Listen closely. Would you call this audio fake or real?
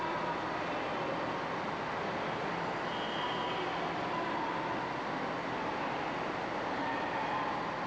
real